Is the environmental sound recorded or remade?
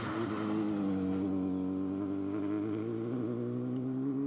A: recorded